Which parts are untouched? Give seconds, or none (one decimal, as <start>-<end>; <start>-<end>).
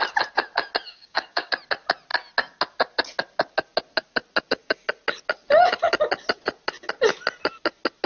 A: 0.0-0.8; 1.5-8.1